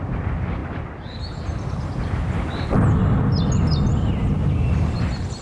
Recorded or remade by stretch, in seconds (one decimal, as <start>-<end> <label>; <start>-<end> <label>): 0.0-5.4 recorded